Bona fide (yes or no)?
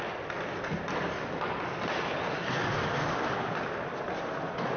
yes